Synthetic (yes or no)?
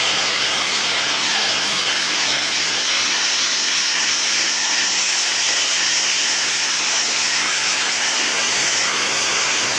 yes